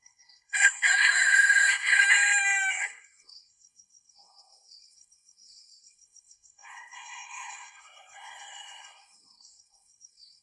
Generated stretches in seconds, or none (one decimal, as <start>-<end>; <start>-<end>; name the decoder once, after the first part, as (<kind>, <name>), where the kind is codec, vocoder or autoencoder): 0.0-2.0 (codec, SNAC); 2.7-10.4